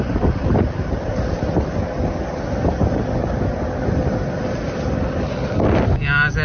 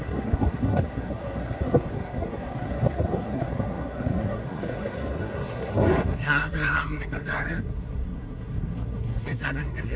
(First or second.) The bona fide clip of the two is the first